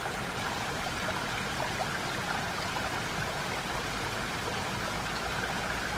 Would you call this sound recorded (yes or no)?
yes